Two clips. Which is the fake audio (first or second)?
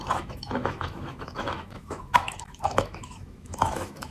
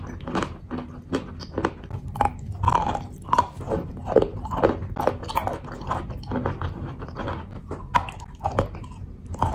first